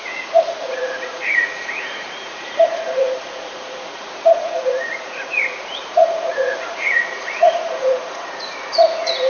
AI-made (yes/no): yes